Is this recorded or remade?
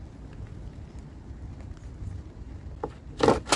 recorded